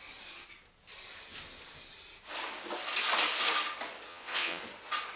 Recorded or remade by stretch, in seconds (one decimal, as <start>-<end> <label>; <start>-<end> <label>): 0.0-4.1 recorded; 4.1-4.6 remade; 4.6-5.2 recorded